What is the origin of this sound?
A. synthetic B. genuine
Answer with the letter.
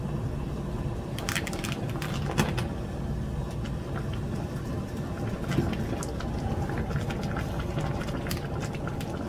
B